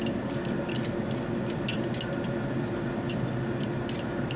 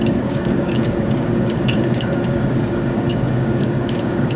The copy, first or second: second